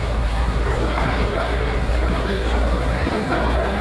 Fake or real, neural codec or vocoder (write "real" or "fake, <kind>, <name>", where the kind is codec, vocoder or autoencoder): fake, codec, SNAC